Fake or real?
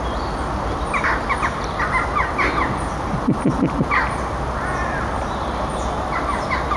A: real